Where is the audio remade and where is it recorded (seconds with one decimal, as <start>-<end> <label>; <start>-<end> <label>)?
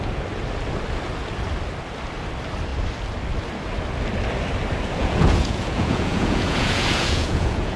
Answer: 0.0-5.0 recorded; 5.0-7.8 remade